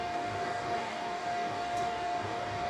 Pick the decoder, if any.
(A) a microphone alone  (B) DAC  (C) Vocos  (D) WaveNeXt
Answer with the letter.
B